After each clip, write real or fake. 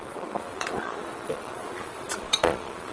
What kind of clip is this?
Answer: fake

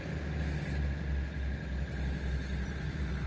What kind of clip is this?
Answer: real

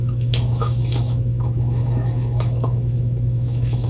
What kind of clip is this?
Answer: fake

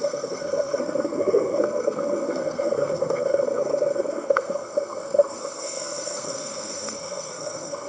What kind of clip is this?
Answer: fake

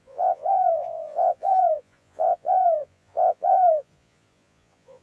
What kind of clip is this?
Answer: fake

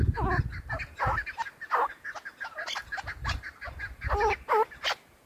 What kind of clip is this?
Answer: real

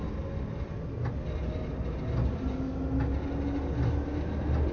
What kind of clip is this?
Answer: real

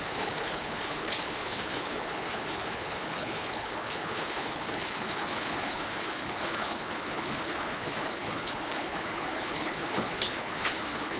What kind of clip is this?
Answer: fake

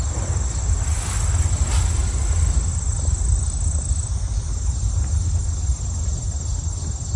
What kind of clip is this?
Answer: real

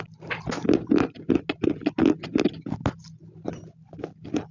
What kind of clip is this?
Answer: real